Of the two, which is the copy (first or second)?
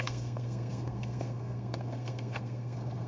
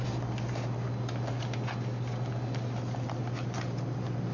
first